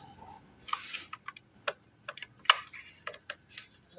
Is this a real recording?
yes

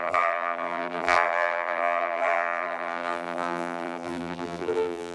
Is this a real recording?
no